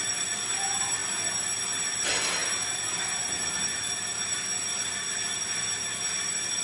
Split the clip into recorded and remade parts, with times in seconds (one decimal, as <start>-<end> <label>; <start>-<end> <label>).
0.0-6.6 recorded